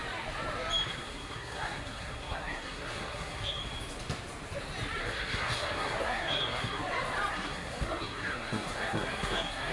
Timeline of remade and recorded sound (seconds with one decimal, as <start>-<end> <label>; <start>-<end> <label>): 0.0-0.9 recorded; 0.9-3.6 remade; 3.6-5.0 recorded; 5.0-6.8 remade; 6.8-7.3 recorded; 7.3-9.7 remade